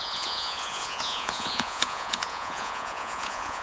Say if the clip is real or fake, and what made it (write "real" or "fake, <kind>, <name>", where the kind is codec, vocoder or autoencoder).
fake, vocoder, Vocos